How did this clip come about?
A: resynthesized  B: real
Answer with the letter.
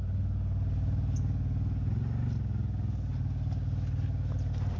B